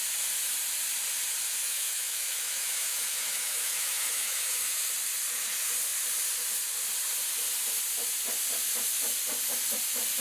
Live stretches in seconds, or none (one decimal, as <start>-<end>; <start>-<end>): 0.0-1.6; 4.9-10.2